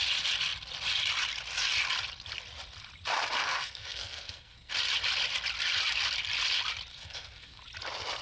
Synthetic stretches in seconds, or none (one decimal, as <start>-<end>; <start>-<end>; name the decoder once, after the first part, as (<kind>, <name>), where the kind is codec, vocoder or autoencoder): 3.4-4.7 (codec, SNAC); 6.9-7.6